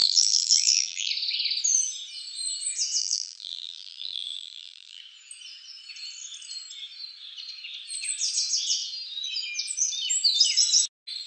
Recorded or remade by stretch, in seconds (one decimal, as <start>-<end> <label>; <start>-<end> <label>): 0.0-1.1 remade; 1.1-3.0 recorded; 3.0-5.0 remade; 5.0-11.3 recorded

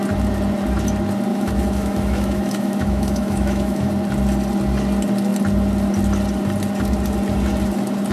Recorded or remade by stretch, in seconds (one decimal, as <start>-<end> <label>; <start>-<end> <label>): 0.0-1.3 recorded; 1.3-3.9 remade; 3.9-8.1 recorded